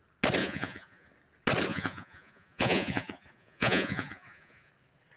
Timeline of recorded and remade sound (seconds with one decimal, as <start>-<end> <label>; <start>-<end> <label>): 0.0-0.4 recorded; 0.4-1.1 remade; 1.1-1.7 recorded; 1.7-4.7 remade; 4.7-5.2 recorded